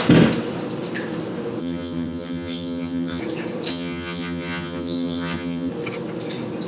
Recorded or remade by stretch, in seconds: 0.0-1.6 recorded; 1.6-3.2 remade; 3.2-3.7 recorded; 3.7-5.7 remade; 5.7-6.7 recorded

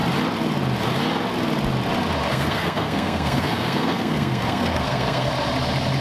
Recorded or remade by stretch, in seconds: 0.0-2.3 recorded; 2.3-5.3 remade; 5.3-6.0 recorded

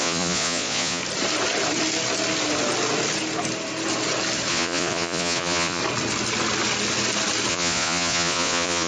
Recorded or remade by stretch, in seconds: 0.0-1.0 remade; 1.0-4.5 recorded; 4.5-5.8 remade; 5.8-7.5 recorded; 7.5-8.9 remade

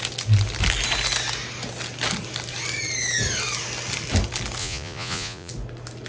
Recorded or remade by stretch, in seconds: 0.0-4.6 recorded; 4.6-5.5 remade; 5.5-6.1 recorded

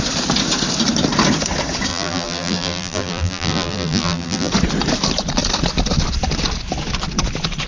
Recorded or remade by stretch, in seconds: 0.0-1.9 recorded; 1.9-4.5 remade; 4.5-7.7 recorded

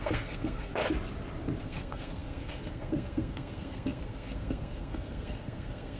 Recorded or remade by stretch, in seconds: 0.0-0.8 remade; 0.8-1.6 recorded; 1.6-6.0 remade

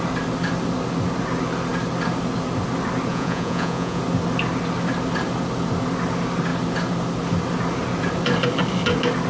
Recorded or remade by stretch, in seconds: 0.0-3.1 recorded; 3.1-4.0 remade; 4.0-9.3 recorded

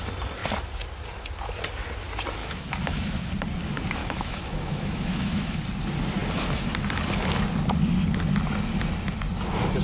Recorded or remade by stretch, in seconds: 0.0-2.4 recorded; 2.4-3.3 remade; 3.3-4.0 recorded; 4.0-5.6 remade; 5.6-9.8 recorded